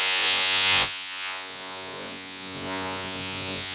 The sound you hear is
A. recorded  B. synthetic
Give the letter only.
B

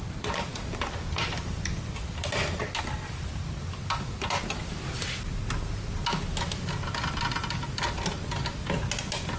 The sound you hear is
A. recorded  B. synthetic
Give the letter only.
A